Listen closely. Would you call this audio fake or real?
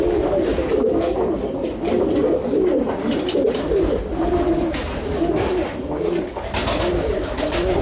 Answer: real